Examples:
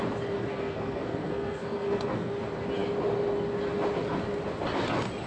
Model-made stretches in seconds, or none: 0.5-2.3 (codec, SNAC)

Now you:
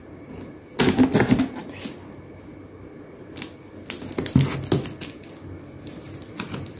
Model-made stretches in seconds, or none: none

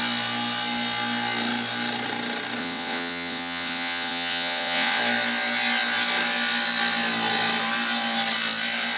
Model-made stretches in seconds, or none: 2.6-5.0 (vocoder, WaveNeXt)

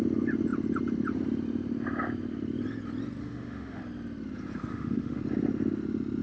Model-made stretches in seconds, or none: 3.2-3.8 (autoencoder, DAC-VAE); 4.7-5.2

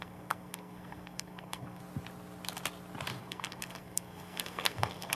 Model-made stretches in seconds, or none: 0.0-1.8 (codec, SNAC); 3.2-5.1

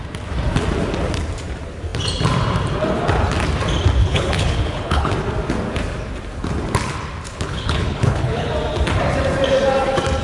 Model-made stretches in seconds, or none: 4.0-5.1 (codec, HILCodec); 7.3-8.5